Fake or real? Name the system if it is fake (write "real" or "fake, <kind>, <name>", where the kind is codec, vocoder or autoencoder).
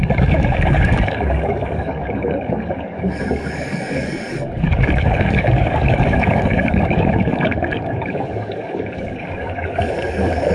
fake, codec, DAC